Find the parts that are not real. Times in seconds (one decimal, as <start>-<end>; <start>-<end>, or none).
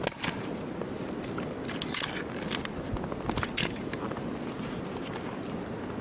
none